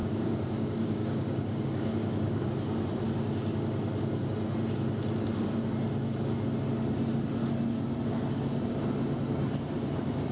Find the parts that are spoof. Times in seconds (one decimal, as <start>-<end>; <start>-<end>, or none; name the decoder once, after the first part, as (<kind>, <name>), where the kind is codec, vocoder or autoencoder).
0.0-2.5 (codec, DAC)